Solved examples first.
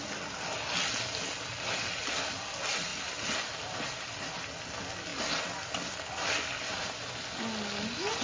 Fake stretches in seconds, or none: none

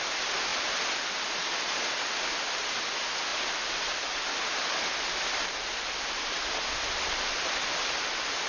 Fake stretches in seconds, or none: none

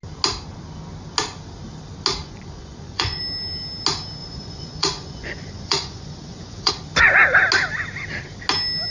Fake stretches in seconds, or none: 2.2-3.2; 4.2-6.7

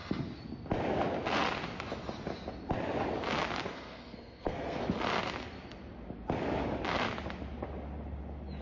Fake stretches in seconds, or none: 3.7-4.8

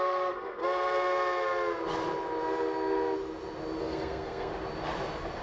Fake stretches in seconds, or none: 0.0-0.6; 3.8-4.5

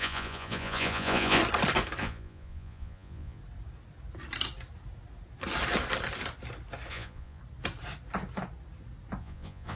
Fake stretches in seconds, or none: 0.0-1.4; 2.0-3.4; 6.9-7.4; 9.2-9.8